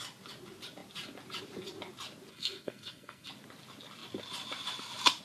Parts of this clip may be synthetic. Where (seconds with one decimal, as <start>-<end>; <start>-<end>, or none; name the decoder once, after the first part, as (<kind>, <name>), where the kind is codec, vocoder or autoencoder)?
2.3-3.3 (codec, SNAC)